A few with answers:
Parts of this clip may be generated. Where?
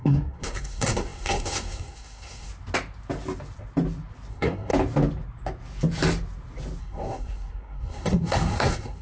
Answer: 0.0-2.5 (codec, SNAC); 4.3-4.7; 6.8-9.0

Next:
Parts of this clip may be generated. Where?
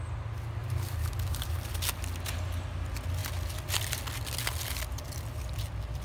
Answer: 0.6-1.5 (vocoder, BigVGAN v2)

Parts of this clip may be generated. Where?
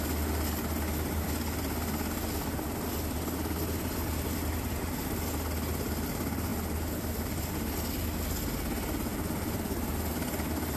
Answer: none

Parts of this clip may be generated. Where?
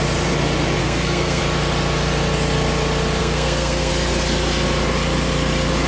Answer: 0.8-1.4 (codec, SNAC); 3.2-3.9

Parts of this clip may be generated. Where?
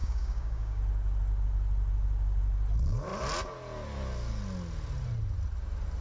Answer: 0.0-0.8 (codec, DAC)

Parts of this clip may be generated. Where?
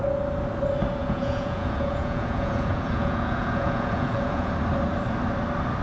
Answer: 1.0-4.5 (vocoder, Vocos)